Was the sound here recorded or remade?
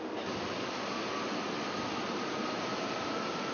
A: recorded